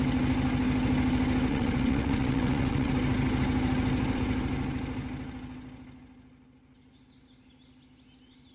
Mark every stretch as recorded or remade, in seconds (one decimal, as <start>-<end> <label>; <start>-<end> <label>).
0.0-1.5 recorded; 1.5-2.9 remade; 2.9-8.5 recorded